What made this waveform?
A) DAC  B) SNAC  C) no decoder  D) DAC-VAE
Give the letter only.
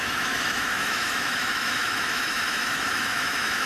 D